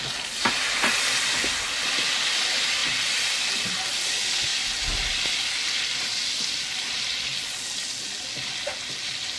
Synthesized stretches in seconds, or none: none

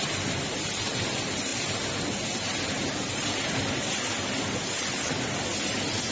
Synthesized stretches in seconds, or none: none

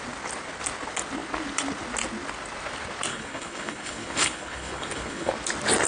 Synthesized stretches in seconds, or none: 3.1-5.3 (codec, HILCodec)

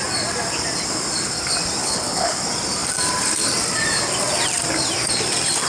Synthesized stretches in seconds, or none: 1.8-2.4 (codec, HILCodec)

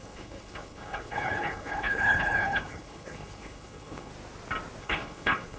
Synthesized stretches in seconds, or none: 0.0-4.1 (codec, HILCodec); 4.8-5.6